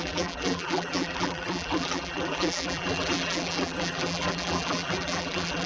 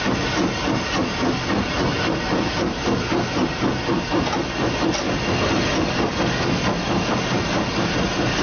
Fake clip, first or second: first